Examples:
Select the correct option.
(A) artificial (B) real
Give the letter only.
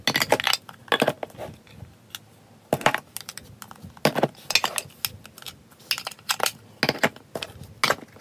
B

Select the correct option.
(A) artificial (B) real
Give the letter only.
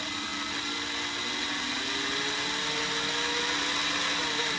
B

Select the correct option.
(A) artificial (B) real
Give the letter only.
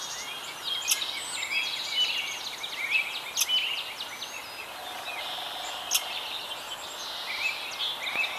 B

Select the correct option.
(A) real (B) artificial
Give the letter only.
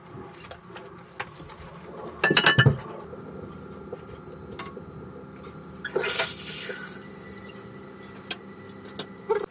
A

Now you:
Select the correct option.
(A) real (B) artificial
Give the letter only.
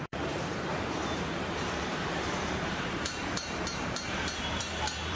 B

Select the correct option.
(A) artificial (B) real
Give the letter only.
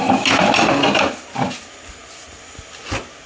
B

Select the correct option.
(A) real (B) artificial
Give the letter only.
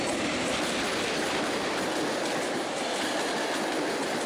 B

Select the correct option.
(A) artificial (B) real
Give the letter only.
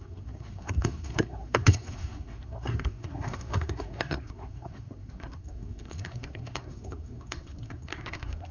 A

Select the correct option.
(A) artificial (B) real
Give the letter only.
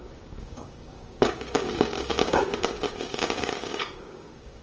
A